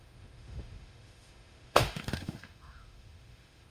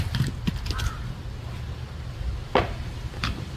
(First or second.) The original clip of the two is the second